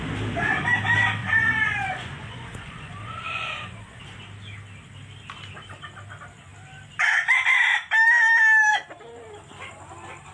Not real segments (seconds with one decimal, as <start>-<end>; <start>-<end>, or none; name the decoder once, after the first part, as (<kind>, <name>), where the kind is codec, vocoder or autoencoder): 1.2-4.0 (vocoder, Vocos)

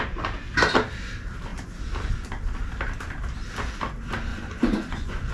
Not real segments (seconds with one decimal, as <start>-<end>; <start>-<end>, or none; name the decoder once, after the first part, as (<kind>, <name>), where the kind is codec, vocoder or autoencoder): 4.3-5.3 (vocoder, Vocos)

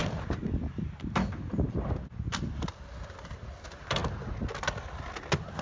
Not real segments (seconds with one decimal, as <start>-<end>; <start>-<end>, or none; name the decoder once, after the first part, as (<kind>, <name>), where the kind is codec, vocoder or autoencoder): none

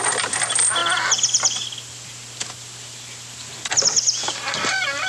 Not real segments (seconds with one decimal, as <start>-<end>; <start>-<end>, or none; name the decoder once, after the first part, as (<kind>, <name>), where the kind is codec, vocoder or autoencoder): none

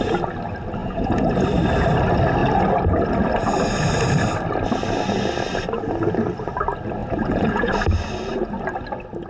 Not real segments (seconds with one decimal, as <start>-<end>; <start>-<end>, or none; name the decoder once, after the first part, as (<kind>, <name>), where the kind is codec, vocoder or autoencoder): 0.8-1.3 (vocoder, Vocos); 7.0-7.7

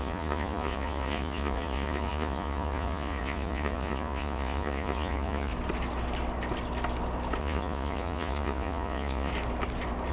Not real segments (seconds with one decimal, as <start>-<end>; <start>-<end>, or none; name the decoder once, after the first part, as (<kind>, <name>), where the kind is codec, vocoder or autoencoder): 0.0-5.5 (vocoder, Vocos); 7.4-9.3

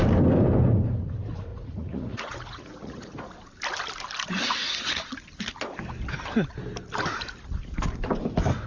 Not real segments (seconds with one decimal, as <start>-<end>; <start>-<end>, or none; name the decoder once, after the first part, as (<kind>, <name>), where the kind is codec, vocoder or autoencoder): 1.5-3.3 (vocoder, Vocos)